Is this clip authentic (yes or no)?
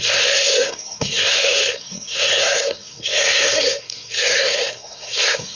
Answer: no